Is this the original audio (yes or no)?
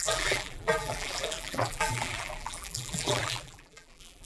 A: no